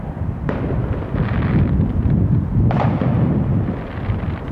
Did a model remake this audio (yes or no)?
yes